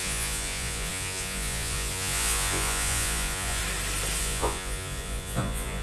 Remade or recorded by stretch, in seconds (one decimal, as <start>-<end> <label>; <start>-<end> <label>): 0.0-3.6 remade; 3.6-4.2 recorded; 4.2-5.8 remade